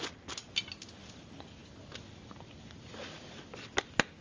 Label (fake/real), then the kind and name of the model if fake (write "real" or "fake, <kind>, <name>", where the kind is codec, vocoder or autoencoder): real